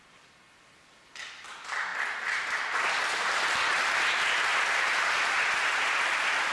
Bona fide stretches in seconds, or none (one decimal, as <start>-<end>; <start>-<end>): 0.0-6.5